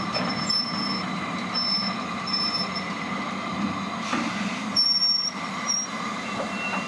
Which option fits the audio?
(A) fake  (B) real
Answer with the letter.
A